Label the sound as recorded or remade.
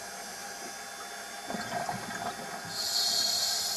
recorded